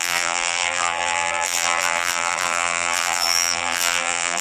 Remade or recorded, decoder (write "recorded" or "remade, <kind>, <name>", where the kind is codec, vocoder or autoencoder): remade, vocoder, BigVGAN v2